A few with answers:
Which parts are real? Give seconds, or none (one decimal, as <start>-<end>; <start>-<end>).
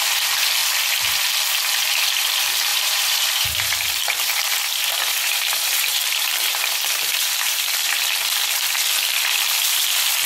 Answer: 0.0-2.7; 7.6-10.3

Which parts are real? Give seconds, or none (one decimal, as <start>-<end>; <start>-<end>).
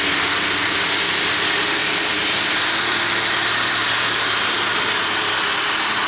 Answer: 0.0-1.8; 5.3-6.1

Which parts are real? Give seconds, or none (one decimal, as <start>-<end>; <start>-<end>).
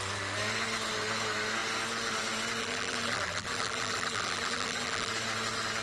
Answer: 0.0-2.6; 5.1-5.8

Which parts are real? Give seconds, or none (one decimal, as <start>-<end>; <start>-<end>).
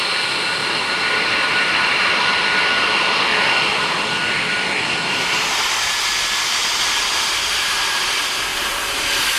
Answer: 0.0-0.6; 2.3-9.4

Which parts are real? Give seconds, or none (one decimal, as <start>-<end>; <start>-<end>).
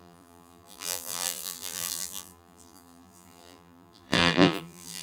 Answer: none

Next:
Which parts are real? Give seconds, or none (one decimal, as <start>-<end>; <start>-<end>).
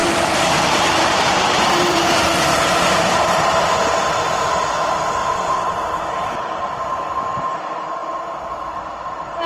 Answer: 3.6-5.2; 7.6-9.5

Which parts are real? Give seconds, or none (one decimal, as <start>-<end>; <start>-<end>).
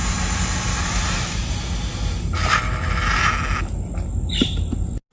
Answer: 3.1-5.1